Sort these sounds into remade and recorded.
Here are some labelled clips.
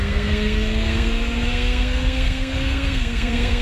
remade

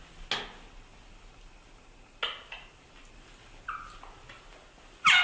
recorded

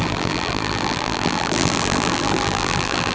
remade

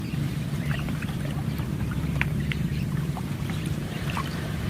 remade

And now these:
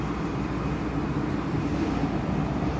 recorded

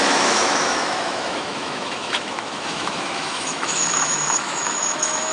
remade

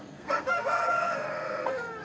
remade